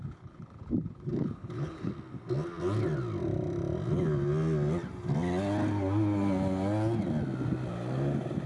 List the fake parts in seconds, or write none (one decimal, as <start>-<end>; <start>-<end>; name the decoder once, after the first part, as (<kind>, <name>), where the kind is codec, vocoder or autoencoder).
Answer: 0.0-1.9 (codec, HILCodec)